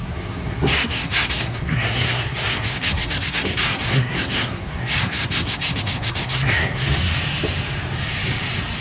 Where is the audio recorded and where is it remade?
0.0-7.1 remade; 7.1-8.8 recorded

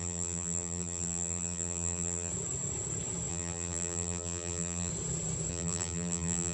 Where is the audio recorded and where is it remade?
0.0-2.3 remade; 2.3-3.3 recorded; 3.3-4.9 remade; 4.9-5.5 recorded; 5.5-6.5 remade